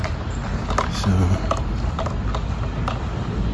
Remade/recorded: recorded